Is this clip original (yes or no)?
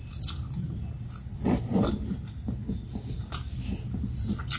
yes